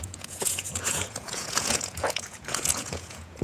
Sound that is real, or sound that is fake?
fake